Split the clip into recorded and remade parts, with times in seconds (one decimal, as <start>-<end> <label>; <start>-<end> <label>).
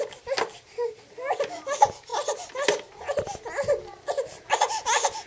0.0-5.3 recorded